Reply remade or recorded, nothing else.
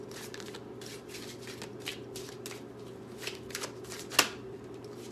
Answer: recorded